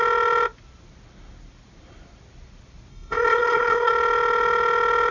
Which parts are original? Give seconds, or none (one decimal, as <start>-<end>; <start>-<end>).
0.0-2.9; 3.9-5.1